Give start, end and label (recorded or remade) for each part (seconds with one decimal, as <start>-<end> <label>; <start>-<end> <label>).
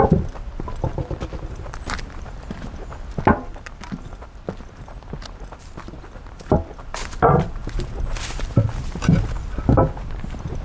0.0-10.6 recorded